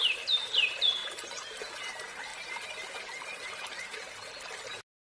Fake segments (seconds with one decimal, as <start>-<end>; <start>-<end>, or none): 1.0-1.6; 2.3-4.1